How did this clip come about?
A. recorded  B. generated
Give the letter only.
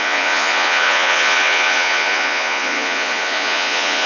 B